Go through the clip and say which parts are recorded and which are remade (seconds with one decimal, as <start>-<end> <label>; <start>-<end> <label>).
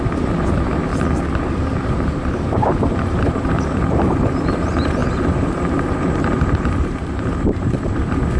0.0-0.9 remade; 0.9-1.5 recorded; 1.5-8.4 remade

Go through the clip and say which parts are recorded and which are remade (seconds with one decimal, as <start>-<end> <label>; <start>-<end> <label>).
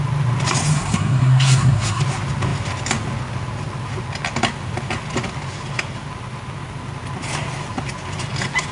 0.0-0.7 recorded; 0.7-2.0 remade; 2.0-8.7 recorded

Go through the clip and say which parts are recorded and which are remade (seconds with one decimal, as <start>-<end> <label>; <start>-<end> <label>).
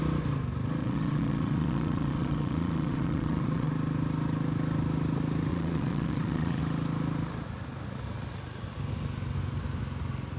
0.0-0.8 recorded; 0.8-3.7 remade; 3.7-5.5 recorded; 5.5-6.6 remade; 6.6-10.4 recorded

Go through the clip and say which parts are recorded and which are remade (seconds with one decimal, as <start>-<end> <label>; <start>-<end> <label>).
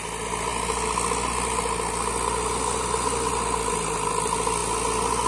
0.0-5.3 recorded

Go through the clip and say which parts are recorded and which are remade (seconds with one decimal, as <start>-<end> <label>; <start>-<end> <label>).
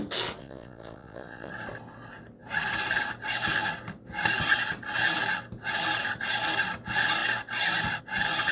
0.0-0.4 recorded; 0.4-1.5 remade; 1.5-8.5 recorded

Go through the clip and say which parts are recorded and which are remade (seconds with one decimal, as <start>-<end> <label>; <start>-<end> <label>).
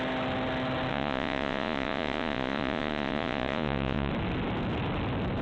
0.0-0.9 recorded; 0.9-4.1 remade; 4.1-5.4 recorded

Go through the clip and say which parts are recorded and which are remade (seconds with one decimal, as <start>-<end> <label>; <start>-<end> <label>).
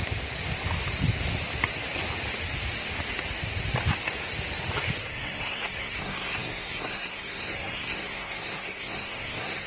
0.0-5.0 recorded; 5.0-9.7 remade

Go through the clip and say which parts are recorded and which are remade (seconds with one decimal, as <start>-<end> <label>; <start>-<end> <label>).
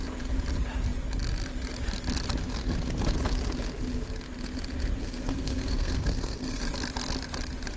0.0-5.0 recorded; 5.0-6.6 remade; 6.6-7.8 recorded